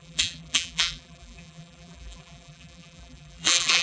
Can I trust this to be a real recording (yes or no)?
no